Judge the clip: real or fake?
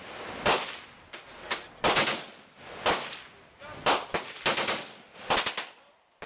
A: real